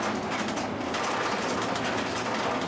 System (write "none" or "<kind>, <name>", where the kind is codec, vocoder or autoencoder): none